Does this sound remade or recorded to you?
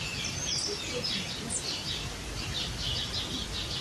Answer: recorded